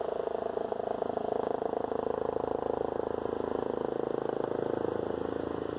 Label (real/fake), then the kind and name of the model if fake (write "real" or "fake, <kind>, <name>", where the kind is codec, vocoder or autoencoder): real